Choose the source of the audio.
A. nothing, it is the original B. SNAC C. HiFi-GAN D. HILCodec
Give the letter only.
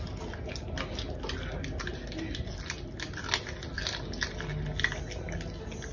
A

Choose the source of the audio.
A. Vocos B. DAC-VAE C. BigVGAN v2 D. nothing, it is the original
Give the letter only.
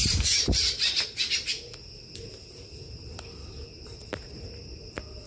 D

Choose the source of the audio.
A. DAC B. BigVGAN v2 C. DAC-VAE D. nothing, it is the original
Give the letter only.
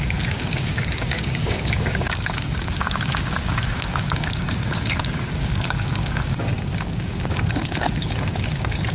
A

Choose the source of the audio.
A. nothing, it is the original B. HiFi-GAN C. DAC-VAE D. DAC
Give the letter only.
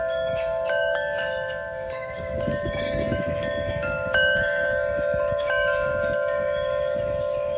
D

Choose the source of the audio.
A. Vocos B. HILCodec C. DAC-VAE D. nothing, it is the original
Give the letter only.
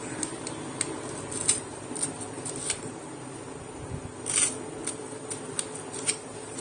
D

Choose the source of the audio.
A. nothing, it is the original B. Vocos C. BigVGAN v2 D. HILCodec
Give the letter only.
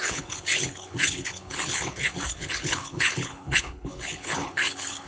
D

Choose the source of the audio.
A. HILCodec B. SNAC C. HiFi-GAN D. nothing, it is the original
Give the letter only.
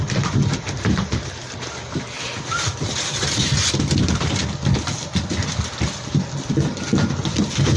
D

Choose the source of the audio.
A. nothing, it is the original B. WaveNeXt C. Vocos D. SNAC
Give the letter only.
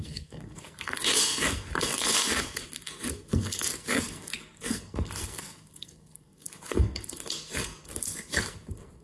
D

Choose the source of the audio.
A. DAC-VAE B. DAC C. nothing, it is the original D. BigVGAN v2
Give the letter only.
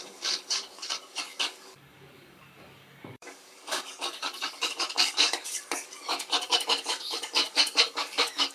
B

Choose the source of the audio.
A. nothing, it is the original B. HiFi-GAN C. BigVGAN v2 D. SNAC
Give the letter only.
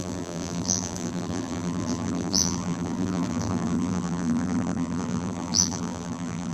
C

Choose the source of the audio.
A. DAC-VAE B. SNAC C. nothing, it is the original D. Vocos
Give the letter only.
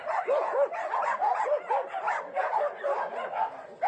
C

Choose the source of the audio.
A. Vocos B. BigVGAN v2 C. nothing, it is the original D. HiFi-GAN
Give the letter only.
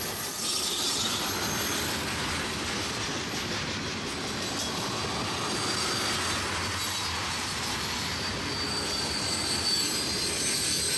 C